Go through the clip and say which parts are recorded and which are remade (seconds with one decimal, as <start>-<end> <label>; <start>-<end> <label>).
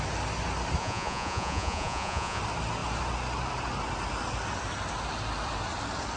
0.0-0.8 recorded; 0.8-2.4 remade; 2.4-6.2 recorded